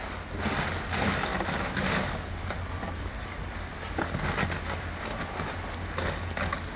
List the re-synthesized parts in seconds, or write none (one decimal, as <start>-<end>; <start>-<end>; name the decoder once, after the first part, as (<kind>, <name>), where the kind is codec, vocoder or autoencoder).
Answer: none